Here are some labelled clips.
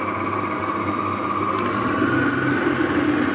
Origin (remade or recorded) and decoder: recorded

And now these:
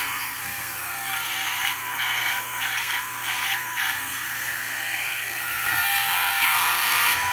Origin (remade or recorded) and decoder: remade, codec, SNAC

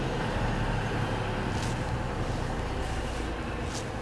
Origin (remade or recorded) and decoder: recorded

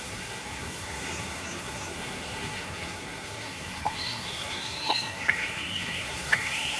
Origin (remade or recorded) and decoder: remade, codec, SNAC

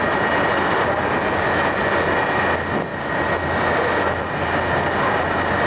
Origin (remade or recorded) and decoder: recorded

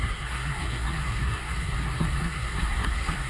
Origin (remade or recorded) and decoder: remade, codec, SNAC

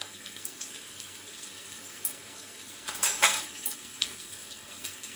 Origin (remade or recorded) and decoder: remade, codec, SNAC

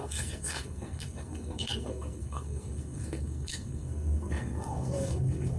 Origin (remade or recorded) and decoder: remade, codec, SNAC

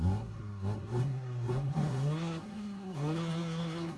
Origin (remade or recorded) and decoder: remade, codec, SNAC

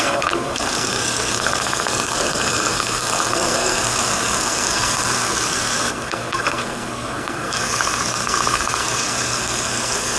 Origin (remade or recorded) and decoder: remade, codec, SNAC